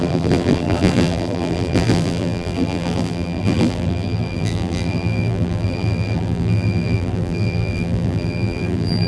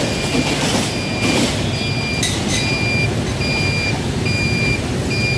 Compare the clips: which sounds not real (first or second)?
first